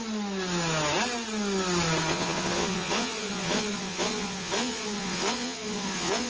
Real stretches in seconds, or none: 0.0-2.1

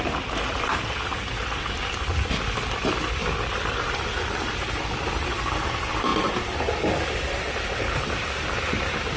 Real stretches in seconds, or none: 0.0-9.2

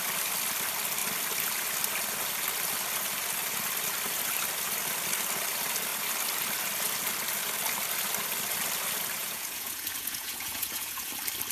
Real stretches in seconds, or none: 0.0-9.2; 11.1-11.5

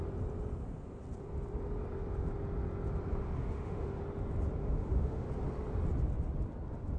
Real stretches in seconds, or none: 0.0-3.4; 4.0-4.6; 5.3-7.0

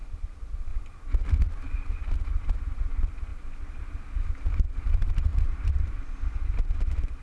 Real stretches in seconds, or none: 0.7-2.9; 3.3-4.5

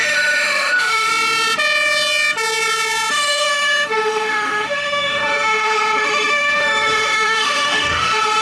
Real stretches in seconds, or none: 1.1-3.1

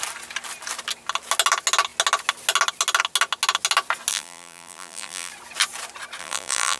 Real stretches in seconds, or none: 0.0-4.1; 5.3-6.2

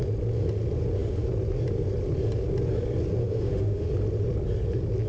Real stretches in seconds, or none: 0.0-3.2; 3.9-5.1